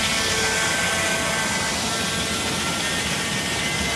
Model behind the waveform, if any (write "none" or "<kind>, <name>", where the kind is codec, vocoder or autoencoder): none